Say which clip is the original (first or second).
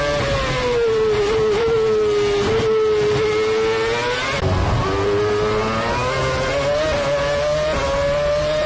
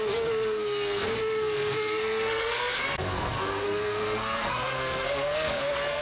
first